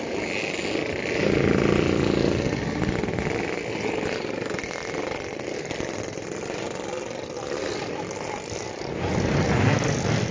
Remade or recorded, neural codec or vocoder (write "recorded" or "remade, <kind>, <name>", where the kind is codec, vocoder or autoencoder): recorded